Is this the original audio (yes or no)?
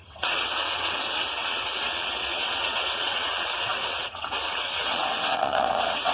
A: no